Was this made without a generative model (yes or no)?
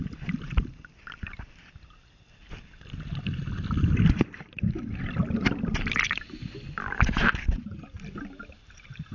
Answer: no